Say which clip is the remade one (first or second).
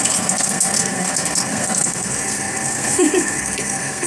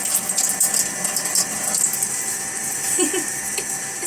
first